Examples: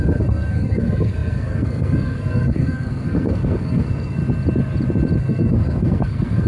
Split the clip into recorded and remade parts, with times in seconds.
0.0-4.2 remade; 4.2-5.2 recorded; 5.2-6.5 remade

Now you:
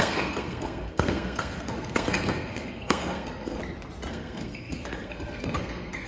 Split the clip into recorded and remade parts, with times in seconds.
0.0-3.6 remade; 3.6-4.1 recorded; 4.1-6.1 remade

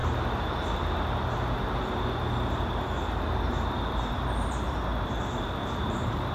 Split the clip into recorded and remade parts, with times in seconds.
0.0-3.4 recorded; 3.4-4.9 remade; 4.9-5.4 recorded; 5.4-6.3 remade

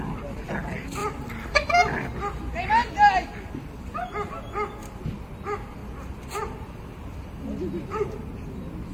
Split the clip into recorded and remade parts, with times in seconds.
0.0-1.0 recorded; 1.0-1.7 remade; 1.7-8.9 recorded